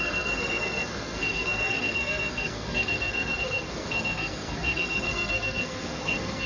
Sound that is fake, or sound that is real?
fake